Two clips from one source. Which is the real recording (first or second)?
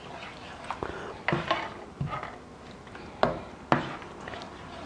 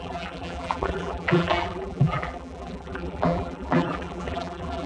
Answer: first